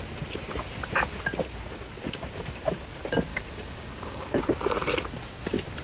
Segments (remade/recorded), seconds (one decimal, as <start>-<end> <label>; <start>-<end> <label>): 0.0-3.3 recorded; 3.3-4.4 remade; 4.4-5.8 recorded